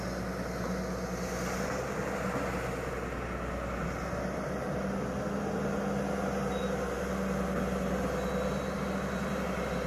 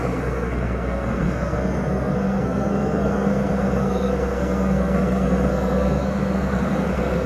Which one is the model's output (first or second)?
second